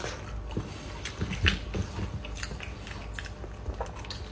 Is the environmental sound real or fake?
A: real